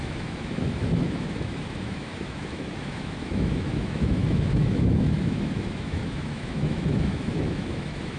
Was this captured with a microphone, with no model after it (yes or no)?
no